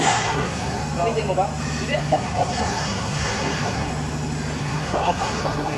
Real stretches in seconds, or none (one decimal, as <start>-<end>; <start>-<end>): 0.8-2.0; 3.9-4.6